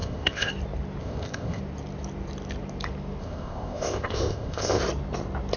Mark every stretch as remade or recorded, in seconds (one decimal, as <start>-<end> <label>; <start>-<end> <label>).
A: 0.0-0.5 remade; 0.5-1.0 recorded; 1.0-1.6 remade; 1.6-3.2 recorded; 3.2-4.8 remade; 4.8-5.6 recorded